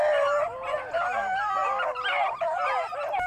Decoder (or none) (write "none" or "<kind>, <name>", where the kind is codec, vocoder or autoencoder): none